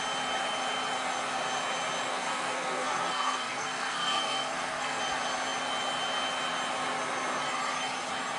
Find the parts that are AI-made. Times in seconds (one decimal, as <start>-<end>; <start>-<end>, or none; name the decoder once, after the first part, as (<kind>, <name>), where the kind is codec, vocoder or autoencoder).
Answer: 2.1-5.0 (codec, SNAC)